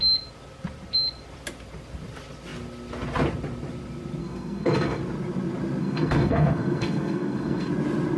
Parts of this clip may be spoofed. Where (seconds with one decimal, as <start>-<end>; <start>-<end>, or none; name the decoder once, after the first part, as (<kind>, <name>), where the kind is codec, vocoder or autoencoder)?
4.2-5.0 (codec, SNAC); 5.8-7.7